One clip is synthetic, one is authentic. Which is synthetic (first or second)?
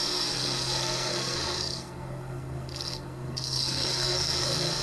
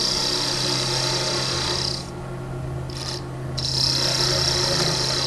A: first